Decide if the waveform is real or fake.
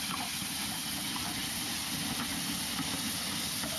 real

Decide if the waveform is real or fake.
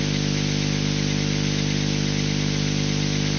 real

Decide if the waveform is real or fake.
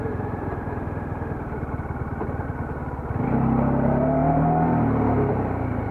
fake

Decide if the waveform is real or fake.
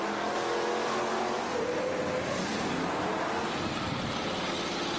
real